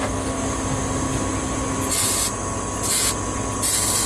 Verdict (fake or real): real